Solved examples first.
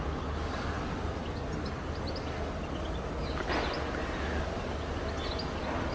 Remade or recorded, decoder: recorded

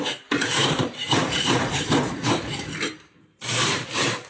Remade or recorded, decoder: remade, vocoder, BigVGAN v2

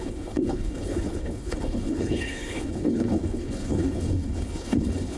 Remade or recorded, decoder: remade, codec, HILCodec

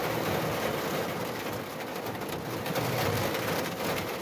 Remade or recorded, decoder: recorded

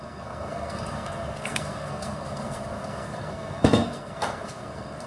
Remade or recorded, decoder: remade, codec, SNAC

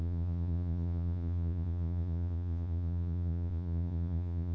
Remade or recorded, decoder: remade, vocoder, Vocos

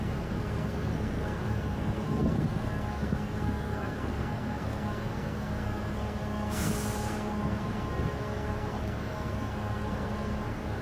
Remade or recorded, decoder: remade, codec, SNAC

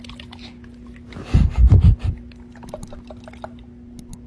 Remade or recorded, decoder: recorded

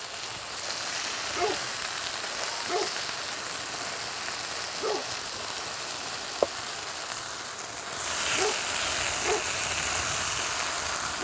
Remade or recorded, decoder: recorded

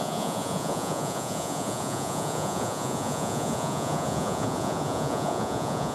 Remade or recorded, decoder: remade, vocoder, Vocos